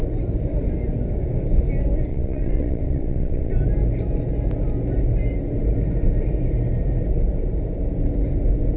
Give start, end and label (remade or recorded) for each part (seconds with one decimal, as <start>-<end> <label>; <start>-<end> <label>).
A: 0.0-2.1 recorded; 2.1-3.5 remade; 3.5-8.8 recorded